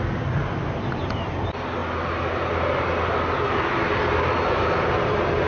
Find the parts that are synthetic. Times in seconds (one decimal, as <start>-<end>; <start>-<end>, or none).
none